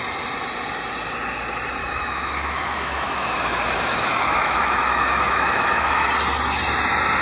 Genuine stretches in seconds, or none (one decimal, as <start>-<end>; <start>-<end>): 0.0-1.8; 6.1-7.2